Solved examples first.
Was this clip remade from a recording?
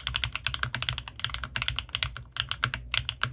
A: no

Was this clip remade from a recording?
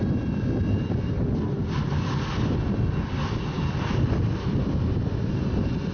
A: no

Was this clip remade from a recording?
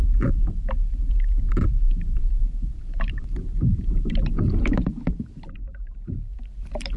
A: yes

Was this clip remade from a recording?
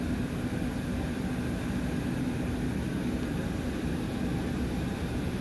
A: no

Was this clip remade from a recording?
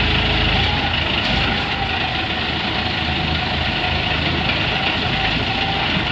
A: no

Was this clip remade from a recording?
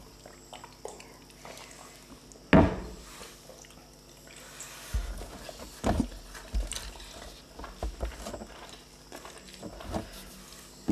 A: no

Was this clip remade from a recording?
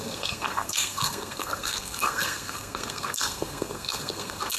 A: yes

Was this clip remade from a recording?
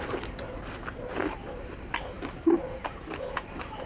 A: yes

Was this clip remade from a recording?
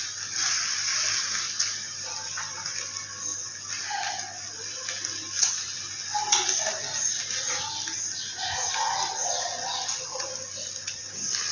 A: no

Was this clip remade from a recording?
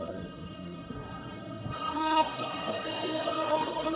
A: yes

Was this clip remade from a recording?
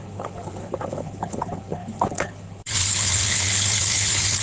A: yes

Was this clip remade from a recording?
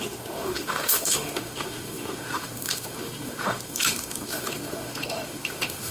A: yes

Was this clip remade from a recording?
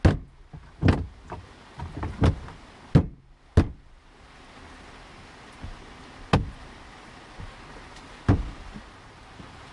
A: no